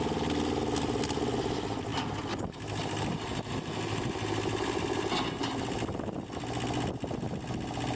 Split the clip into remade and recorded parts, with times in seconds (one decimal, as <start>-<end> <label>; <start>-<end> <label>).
0.0-8.0 recorded